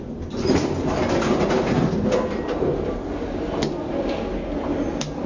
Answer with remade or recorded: recorded